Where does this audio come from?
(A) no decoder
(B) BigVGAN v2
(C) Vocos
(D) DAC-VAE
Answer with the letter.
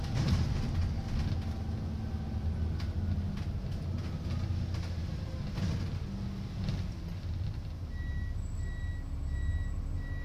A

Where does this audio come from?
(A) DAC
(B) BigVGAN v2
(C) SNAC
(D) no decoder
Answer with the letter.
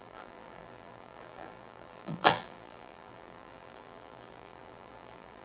B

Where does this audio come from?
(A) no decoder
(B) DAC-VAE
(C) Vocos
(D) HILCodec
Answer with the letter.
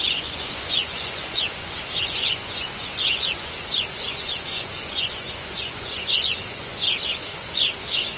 C